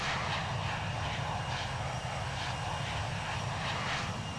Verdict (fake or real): real